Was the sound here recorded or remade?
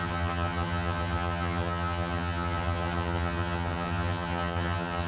remade